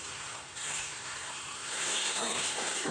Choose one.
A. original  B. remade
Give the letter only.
B